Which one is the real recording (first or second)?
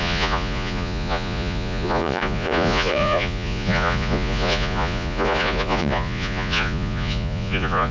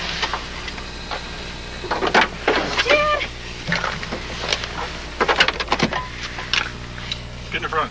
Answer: second